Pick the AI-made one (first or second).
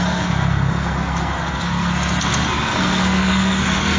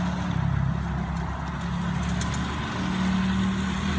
first